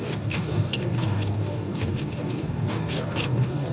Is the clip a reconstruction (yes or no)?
yes